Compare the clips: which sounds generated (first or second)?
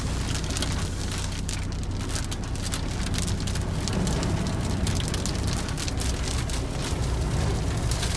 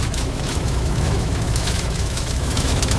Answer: second